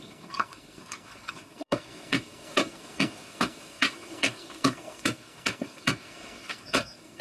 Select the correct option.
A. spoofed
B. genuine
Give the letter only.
A